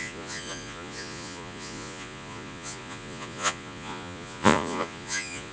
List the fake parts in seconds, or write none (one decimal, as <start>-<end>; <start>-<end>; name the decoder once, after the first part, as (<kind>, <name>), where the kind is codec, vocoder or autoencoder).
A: 0.0-5.5 (vocoder, Vocos)